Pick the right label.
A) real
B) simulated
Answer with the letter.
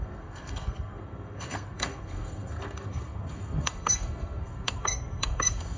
B